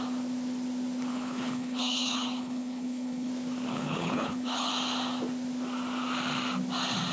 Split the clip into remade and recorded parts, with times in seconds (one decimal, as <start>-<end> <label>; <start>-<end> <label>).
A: 0.0-1.1 recorded; 1.1-3.3 remade; 3.3-3.7 recorded; 3.7-4.7 remade; 4.7-7.1 recorded